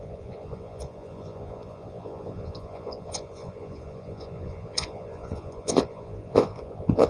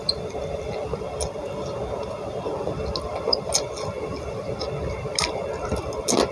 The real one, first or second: second